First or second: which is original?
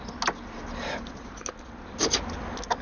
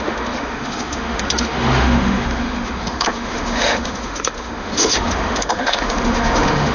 first